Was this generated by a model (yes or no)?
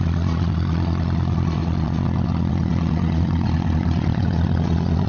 yes